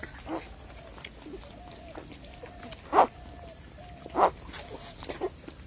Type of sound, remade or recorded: recorded